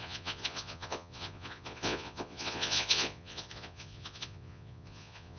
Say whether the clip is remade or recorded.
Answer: remade